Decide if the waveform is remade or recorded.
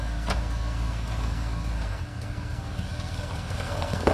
remade